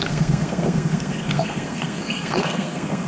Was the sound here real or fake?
fake